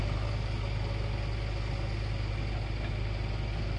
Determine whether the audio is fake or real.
real